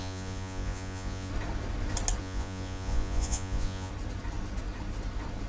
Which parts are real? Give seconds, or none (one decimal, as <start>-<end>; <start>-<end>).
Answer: 1.3-2.2; 3.9-5.5